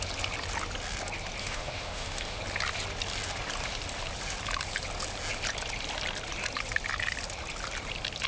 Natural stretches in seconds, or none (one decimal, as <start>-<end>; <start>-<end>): 0.0-1.4; 2.4-8.3